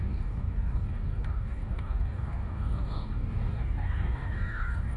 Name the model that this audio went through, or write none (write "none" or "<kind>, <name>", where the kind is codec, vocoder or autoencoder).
codec, DAC